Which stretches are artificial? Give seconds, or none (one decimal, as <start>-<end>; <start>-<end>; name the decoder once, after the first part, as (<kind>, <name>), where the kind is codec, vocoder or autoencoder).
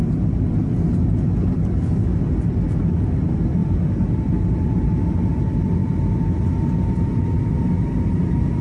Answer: none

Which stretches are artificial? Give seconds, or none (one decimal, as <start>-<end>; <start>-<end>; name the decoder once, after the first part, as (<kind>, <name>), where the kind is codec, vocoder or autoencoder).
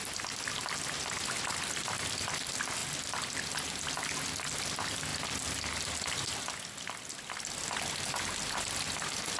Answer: none